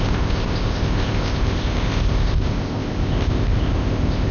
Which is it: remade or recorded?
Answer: remade